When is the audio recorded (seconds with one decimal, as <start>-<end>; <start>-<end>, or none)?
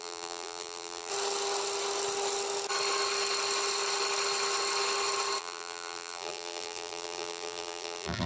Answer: 1.1-5.4